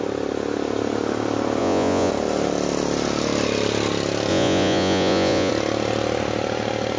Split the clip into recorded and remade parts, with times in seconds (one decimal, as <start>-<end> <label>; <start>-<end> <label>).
0.0-1.6 recorded; 1.6-2.1 remade; 2.1-4.3 recorded; 4.3-5.5 remade; 5.5-7.0 recorded